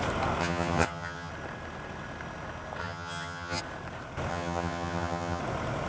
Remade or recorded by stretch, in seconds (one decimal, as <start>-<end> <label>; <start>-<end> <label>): 0.0-0.4 recorded; 0.4-1.3 remade; 1.3-2.8 recorded; 2.8-3.6 remade; 3.6-4.3 recorded; 4.3-5.4 remade; 5.4-5.9 recorded